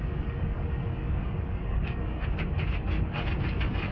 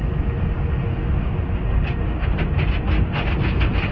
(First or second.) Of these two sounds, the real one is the second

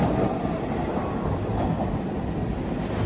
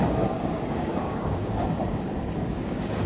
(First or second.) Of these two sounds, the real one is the first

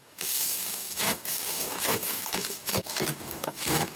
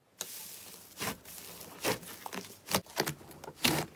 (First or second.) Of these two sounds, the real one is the second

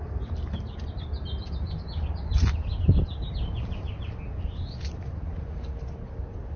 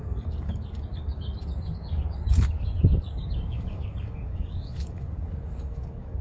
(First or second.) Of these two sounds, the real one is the first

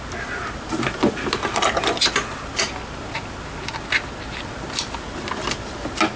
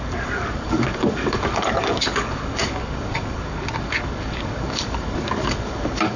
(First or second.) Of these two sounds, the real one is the first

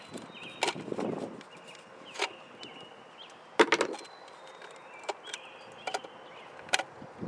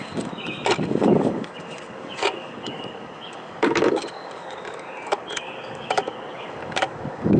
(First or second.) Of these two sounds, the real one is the first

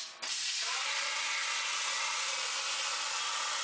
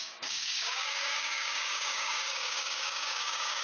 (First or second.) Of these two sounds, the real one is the first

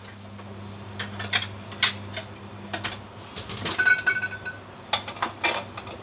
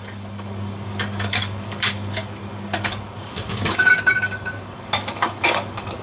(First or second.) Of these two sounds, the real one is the first